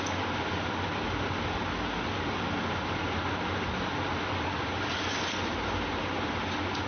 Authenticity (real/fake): real